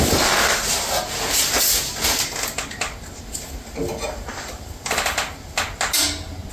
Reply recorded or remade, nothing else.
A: recorded